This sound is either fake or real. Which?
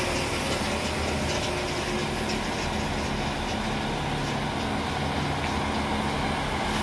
real